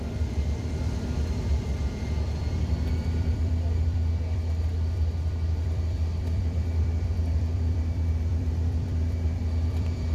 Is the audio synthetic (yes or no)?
yes